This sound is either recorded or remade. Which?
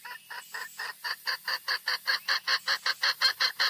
recorded